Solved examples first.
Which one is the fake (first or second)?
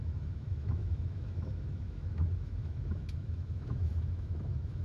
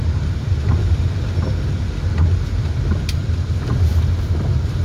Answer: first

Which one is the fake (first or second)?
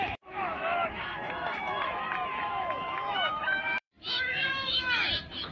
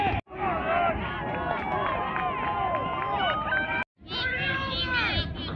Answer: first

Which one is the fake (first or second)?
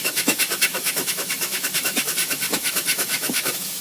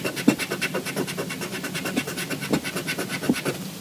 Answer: first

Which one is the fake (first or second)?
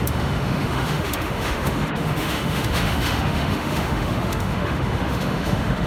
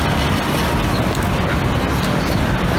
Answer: first